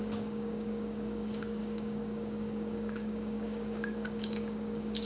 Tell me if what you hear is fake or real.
fake